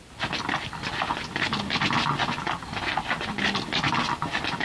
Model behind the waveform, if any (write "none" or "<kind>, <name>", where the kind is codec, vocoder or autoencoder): none